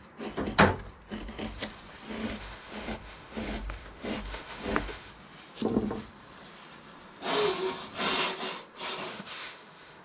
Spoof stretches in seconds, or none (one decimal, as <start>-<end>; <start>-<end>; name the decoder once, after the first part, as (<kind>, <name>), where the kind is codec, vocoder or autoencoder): 2.2-5.1 (autoencoder, DAC-VAE); 9.0-10.0